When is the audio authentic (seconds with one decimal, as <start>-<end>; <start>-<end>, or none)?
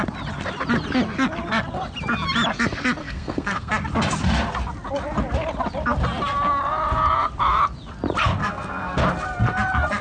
0.0-3.0; 3.7-8.4; 9.0-10.0